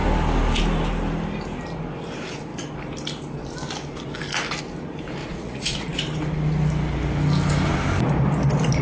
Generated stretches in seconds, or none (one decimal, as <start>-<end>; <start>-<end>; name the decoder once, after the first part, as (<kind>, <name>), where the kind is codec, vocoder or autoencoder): 5.2-6.0 (vocoder, Vocos)